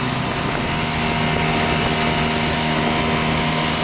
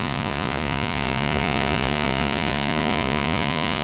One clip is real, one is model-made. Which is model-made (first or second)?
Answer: second